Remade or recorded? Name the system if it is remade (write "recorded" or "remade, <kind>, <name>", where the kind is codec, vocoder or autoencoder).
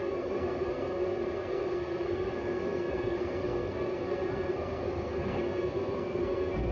remade, codec, SNAC